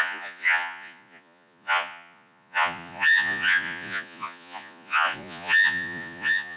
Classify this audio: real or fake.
fake